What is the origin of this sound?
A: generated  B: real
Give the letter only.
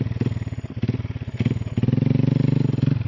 B